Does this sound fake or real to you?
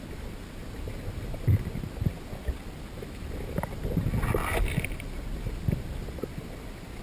real